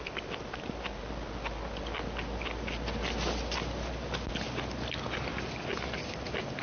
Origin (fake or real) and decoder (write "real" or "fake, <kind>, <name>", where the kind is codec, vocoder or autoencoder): real